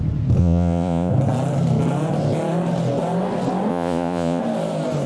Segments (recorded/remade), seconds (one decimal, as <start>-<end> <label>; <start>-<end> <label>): 0.0-0.4 recorded; 0.4-1.1 remade; 1.1-3.7 recorded; 3.7-4.4 remade; 4.4-5.1 recorded